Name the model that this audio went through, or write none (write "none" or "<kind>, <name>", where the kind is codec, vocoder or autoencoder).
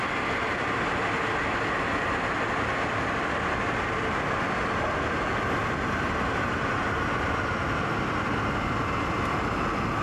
none